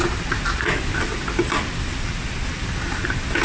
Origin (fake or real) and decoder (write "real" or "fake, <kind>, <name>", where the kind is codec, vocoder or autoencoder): real